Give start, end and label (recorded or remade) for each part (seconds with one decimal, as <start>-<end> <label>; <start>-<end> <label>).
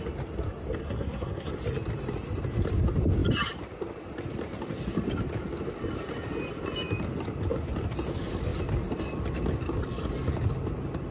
0.0-0.8 recorded; 0.8-1.5 remade; 1.5-11.1 recorded